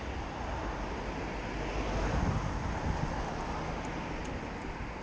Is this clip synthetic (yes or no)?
no